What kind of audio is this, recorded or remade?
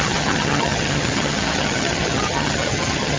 remade